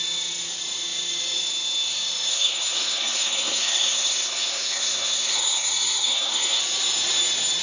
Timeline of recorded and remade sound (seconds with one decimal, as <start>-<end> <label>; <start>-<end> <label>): 0.0-2.3 recorded; 2.3-6.6 remade; 6.6-7.6 recorded